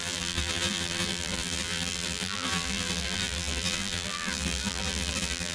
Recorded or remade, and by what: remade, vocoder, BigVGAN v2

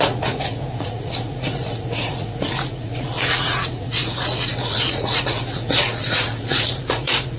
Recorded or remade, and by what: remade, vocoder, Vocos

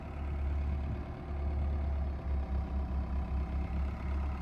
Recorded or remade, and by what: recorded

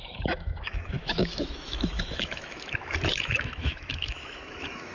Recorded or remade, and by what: remade, autoencoder, DAC-VAE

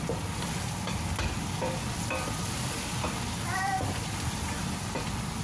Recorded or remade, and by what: remade, vocoder, BigVGAN v2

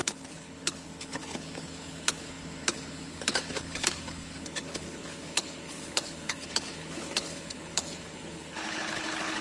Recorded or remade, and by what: remade, codec, HILCodec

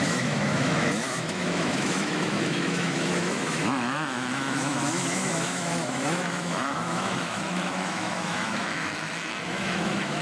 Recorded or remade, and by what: remade, autoencoder, DAC-VAE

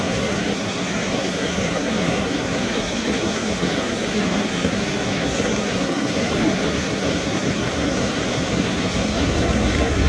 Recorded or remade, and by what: remade, codec, SNAC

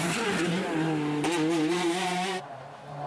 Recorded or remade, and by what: recorded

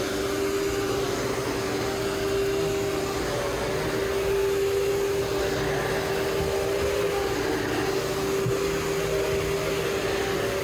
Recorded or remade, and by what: recorded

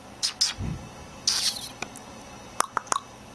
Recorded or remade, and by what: recorded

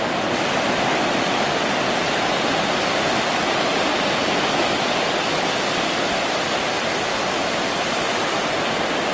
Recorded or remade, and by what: recorded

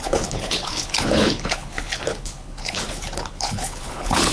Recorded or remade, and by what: remade, codec, HILCodec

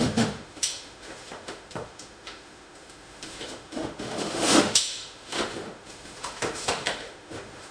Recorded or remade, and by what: remade, autoencoder, DAC-VAE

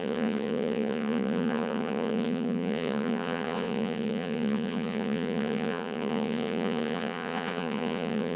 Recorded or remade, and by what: remade, vocoder, Vocos